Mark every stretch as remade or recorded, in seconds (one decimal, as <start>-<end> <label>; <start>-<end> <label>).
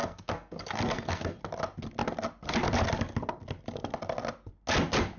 0.0-1.4 remade; 1.4-5.2 recorded